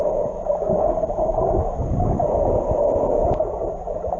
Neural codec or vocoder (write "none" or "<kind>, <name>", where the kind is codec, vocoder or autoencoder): none